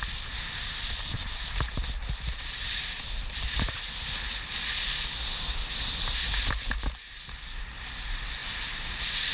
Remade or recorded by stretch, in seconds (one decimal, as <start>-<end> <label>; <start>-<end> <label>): 0.0-9.3 recorded